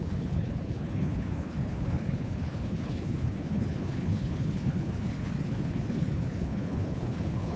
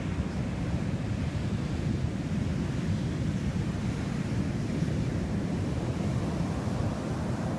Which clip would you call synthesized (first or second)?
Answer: first